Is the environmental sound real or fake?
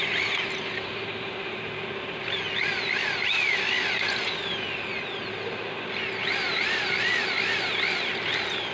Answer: real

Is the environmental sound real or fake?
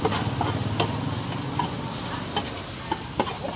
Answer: real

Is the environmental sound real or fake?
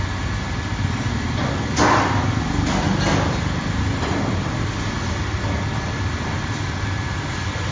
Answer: real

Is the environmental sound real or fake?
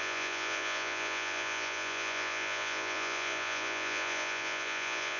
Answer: fake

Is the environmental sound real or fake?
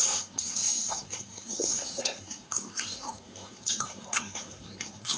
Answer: fake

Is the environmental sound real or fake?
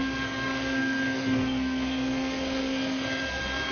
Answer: fake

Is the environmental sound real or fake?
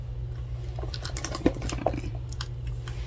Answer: real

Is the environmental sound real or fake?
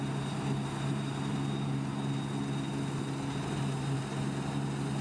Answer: real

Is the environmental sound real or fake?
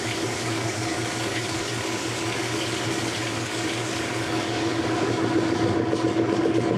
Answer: fake